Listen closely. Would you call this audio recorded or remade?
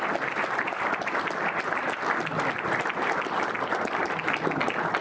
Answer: recorded